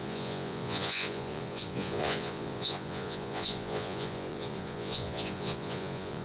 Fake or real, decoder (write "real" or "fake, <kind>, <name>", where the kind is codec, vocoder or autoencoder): fake, vocoder, Vocos